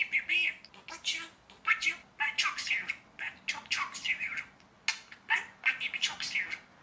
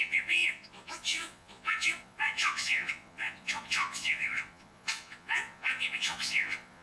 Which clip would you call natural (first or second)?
first